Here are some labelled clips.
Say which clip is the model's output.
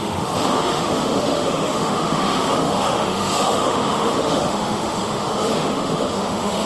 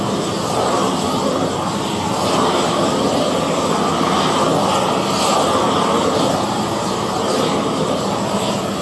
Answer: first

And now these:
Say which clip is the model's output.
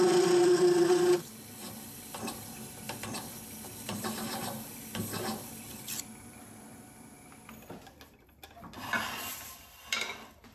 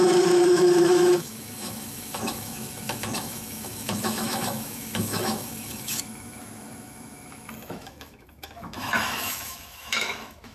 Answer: second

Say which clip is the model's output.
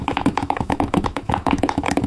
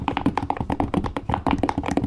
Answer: first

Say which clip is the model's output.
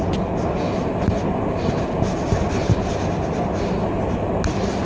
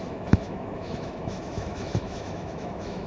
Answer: second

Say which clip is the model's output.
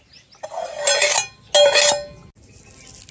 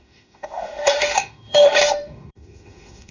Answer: second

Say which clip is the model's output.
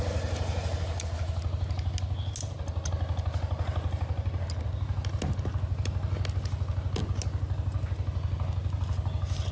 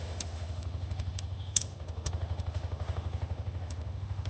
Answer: second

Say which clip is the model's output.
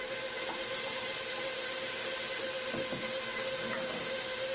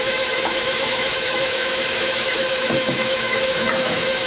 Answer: second